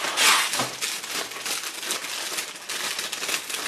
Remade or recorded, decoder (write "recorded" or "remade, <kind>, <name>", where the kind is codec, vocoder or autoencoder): recorded